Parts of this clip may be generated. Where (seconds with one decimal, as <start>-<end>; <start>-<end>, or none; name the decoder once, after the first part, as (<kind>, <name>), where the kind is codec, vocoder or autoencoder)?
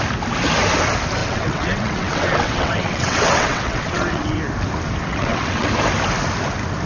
1.2-4.4 (vocoder, WaveNeXt); 5.1-5.7